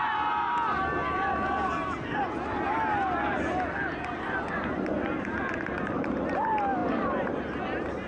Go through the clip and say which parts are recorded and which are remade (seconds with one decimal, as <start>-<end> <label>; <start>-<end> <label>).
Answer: 0.0-6.8 recorded; 6.8-7.4 remade; 7.4-8.1 recorded